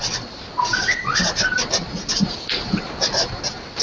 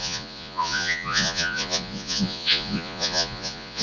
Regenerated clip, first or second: second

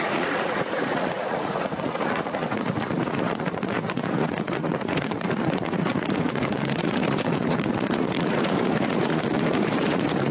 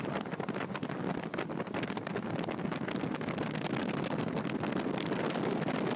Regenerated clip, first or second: first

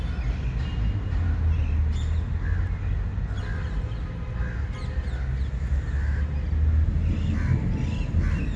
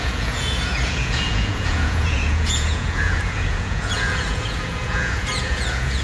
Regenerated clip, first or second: second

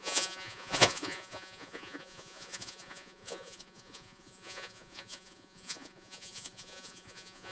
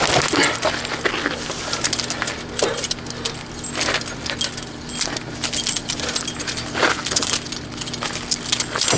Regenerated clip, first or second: first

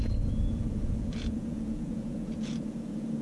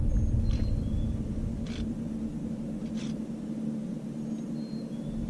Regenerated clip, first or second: first